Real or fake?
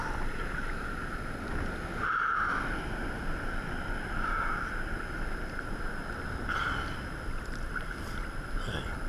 real